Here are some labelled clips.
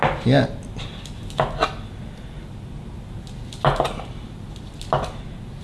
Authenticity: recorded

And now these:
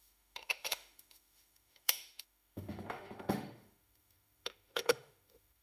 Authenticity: remade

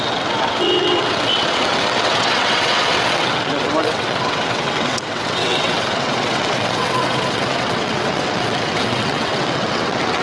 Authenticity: remade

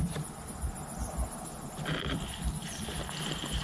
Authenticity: remade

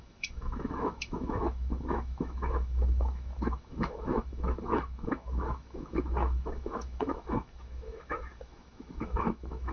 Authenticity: remade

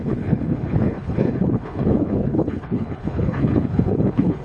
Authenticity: remade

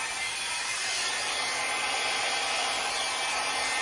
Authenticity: recorded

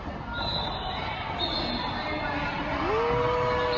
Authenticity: recorded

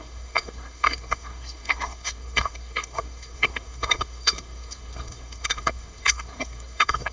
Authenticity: remade